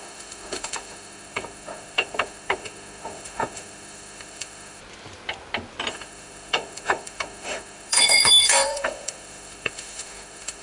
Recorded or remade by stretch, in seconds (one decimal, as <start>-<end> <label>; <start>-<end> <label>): 0.0-4.8 remade; 4.8-5.9 recorded; 5.9-10.6 remade